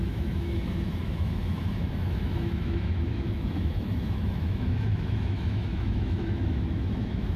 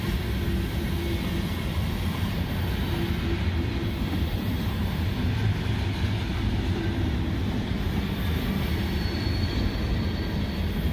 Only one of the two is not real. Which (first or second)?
first